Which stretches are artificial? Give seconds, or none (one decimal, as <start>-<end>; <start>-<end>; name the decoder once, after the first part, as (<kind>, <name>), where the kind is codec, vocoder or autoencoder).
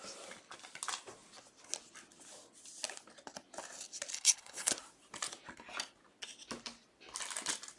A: 4.1-4.7 (codec, HILCodec)